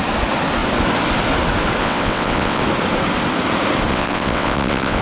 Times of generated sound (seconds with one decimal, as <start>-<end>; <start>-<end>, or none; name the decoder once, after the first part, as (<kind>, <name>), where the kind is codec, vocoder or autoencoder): 1.8-2.6 (vocoder, WaveNeXt); 3.9-5.0